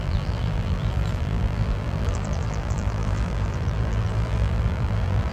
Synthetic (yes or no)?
yes